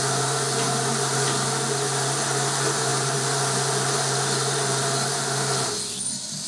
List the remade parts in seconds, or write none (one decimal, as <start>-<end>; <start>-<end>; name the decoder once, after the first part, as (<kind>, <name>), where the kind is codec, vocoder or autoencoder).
none